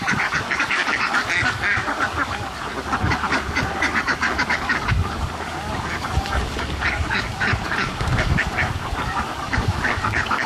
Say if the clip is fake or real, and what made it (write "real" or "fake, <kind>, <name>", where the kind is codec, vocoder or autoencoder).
fake, codec, DAC